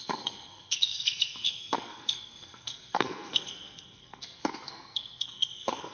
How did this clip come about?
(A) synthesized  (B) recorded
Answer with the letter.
A